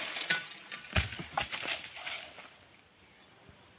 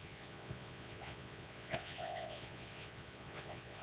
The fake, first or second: second